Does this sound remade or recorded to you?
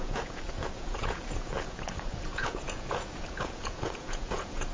remade